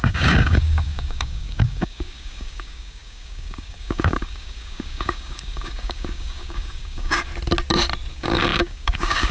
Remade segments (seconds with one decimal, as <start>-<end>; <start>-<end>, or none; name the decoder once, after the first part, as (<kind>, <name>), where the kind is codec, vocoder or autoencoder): 0.0-7.3 (codec, DAC); 8.1-9.3

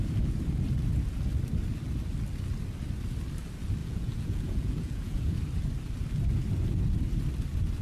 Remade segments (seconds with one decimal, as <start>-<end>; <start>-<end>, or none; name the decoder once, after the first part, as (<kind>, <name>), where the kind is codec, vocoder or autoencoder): 3.8-5.4 (vocoder, Vocos)

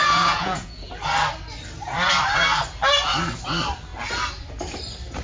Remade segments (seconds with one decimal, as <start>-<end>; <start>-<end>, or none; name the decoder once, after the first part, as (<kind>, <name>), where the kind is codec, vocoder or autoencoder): 0.0-0.9 (vocoder, Vocos)